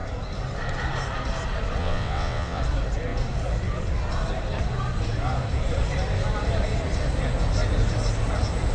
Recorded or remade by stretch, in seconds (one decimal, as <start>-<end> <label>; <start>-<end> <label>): 0.0-1.8 recorded; 1.8-2.6 remade; 2.6-8.7 recorded